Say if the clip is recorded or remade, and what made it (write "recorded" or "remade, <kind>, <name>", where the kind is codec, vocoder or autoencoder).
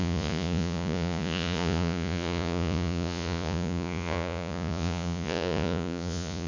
remade, vocoder, Vocos